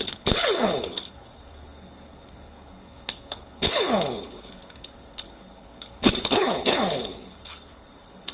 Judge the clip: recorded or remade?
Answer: remade